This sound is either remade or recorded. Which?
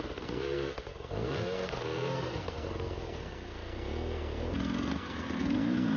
remade